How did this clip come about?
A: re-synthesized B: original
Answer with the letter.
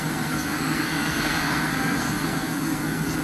A